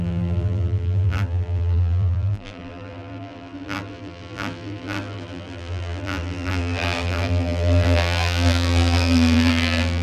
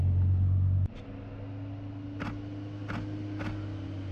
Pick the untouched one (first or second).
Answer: second